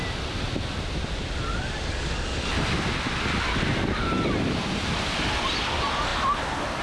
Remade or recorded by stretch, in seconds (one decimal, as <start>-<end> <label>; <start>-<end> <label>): 0.0-2.3 recorded; 2.3-3.1 remade; 3.1-6.8 recorded